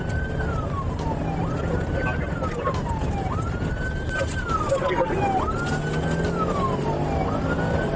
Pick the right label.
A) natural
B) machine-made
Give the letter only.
A